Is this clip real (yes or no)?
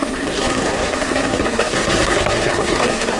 no